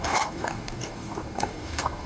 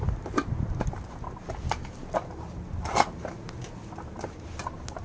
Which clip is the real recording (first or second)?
second